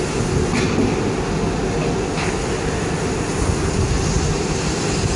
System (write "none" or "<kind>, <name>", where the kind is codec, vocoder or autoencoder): none